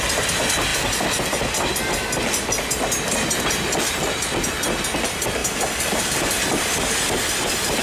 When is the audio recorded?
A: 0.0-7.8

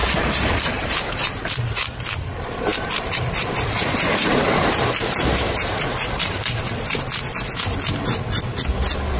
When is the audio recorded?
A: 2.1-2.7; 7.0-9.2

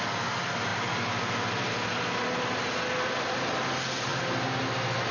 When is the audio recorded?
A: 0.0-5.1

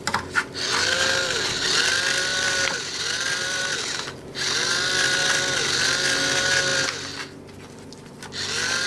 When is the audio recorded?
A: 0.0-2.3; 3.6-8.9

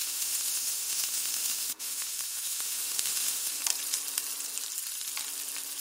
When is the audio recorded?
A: 3.6-5.8

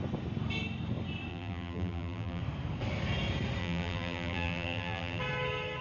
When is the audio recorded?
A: 0.0-1.3; 2.4-3.6; 5.2-5.8

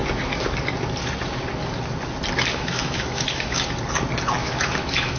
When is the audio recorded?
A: 0.0-2.5; 3.7-4.4